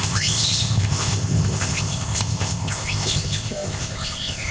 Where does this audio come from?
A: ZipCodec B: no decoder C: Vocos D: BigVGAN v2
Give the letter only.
A